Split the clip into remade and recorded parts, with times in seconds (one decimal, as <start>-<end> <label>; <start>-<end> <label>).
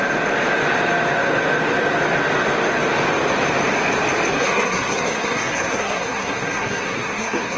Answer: 0.0-4.3 recorded; 4.3-7.6 remade